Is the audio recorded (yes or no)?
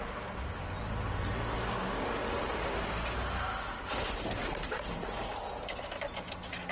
yes